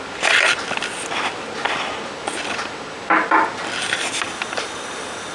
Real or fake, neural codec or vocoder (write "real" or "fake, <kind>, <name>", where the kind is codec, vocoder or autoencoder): real